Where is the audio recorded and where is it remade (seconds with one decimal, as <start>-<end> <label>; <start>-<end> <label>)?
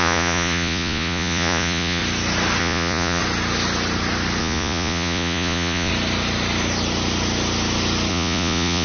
0.0-2.0 remade; 2.0-2.6 recorded; 2.6-3.2 remade; 3.2-4.4 recorded; 4.4-5.9 remade; 5.9-8.1 recorded; 8.1-8.8 remade